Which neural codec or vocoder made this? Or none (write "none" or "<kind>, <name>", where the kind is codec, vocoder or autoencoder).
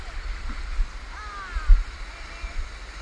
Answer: none